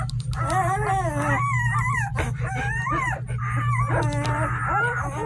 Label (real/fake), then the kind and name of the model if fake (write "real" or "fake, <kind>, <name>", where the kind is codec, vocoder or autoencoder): real